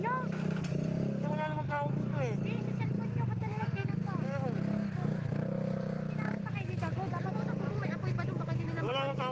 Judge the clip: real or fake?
real